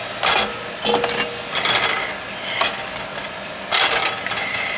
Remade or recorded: recorded